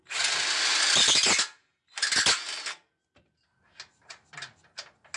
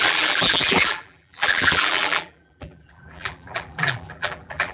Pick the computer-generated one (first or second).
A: second